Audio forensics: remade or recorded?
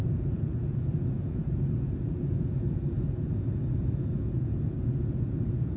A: remade